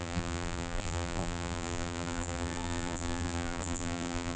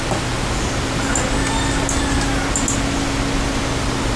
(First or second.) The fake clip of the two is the first